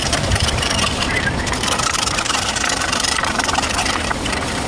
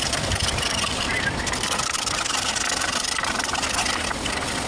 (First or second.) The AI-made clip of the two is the first